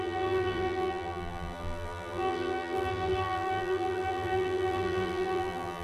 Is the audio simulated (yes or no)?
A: yes